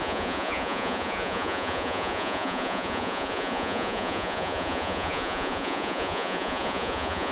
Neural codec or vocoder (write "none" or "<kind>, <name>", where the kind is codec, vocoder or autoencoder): vocoder, Vocos